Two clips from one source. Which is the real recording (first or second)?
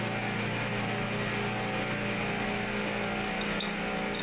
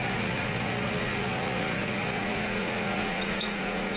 first